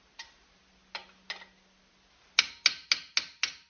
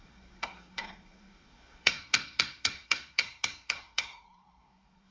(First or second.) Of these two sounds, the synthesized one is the second